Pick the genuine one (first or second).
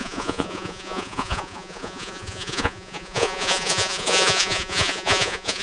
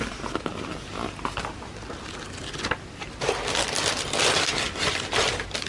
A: second